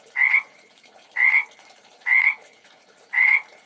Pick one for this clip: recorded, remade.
remade